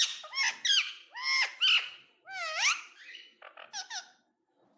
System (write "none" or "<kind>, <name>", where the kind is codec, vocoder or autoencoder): none